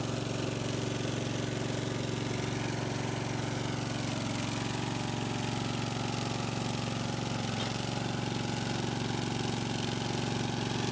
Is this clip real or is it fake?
real